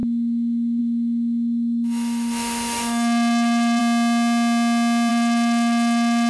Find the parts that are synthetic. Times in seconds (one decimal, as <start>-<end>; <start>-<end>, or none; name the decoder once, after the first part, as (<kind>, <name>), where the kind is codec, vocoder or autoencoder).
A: 0.0-3.8 (autoencoder, DAC-VAE); 5.1-6.3